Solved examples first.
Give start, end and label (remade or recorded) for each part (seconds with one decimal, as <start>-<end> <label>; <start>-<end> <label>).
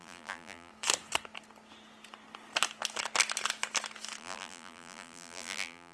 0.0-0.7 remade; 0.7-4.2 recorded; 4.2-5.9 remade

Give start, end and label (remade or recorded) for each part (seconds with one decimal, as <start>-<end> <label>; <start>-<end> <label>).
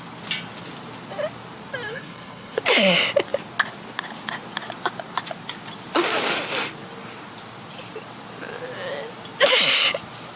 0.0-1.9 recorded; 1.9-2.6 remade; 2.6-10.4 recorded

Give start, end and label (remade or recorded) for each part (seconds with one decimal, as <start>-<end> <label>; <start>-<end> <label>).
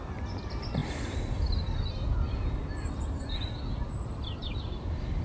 0.0-5.2 recorded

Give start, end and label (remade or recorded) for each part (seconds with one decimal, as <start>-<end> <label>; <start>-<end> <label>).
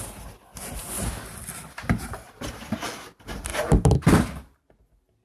0.0-5.2 recorded